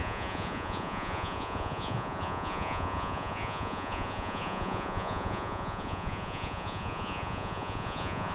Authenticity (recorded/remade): remade